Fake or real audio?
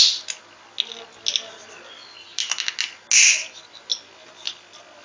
real